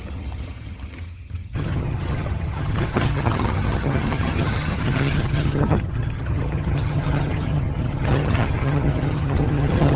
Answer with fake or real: fake